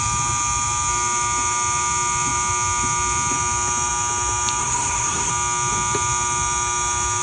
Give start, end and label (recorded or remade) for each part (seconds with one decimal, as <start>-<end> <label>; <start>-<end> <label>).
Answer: 0.0-4.6 recorded; 4.6-5.3 remade; 5.3-7.2 recorded